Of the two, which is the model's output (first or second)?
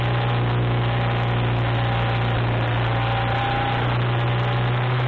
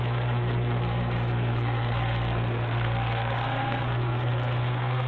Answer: second